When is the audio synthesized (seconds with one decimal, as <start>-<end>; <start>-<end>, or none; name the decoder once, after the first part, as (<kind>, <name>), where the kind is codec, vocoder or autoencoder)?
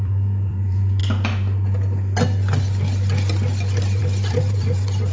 0.0-1.0 (vocoder, BigVGAN v2); 4.0-5.1